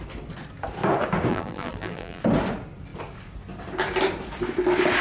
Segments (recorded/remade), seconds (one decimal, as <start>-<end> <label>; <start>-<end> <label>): 0.0-1.3 recorded; 1.3-2.2 remade; 2.2-5.0 recorded